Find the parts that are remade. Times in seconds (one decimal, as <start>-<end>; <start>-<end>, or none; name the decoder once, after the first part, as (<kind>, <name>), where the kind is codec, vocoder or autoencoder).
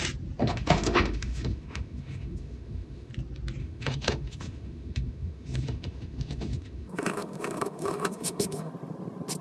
0.4-3.1 (autoencoder, DAC-VAE); 3.6-8.7